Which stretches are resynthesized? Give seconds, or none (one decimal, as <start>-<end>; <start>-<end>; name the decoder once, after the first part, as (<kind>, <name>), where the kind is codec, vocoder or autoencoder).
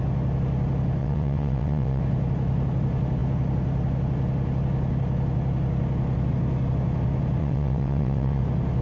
1.0-2.0 (vocoder, WaveNeXt); 7.4-8.4